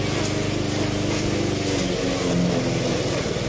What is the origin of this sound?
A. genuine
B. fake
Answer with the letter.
A